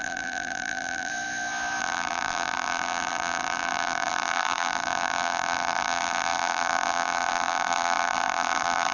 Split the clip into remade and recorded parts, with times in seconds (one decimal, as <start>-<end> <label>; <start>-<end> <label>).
0.0-1.1 remade; 1.1-1.8 recorded; 1.8-8.9 remade